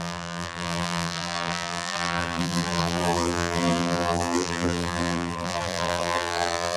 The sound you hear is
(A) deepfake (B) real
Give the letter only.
A